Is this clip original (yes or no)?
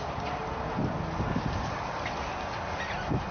yes